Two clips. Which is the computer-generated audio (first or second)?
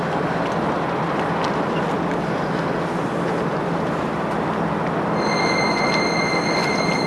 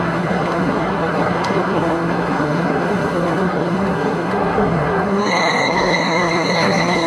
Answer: second